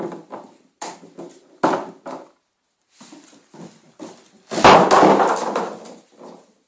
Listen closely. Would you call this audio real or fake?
real